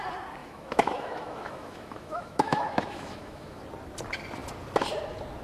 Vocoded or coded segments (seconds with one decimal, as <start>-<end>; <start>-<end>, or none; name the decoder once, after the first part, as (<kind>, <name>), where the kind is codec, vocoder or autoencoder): 0.4-3.6 (autoencoder, DAC-VAE)